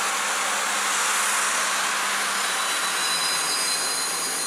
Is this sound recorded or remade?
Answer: recorded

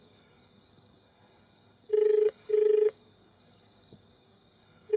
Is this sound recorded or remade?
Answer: remade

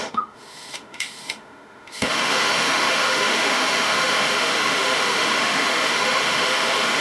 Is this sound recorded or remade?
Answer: remade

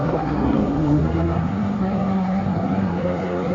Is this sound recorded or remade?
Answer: remade